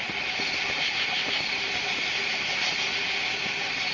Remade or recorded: recorded